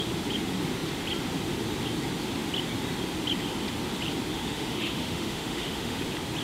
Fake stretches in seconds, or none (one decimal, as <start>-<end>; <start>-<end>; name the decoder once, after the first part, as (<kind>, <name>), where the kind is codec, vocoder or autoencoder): 4.3-6.0 (autoencoder, DAC-VAE)